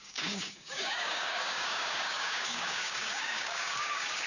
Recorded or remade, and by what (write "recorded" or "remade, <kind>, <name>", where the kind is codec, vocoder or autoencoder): remade, codec, DAC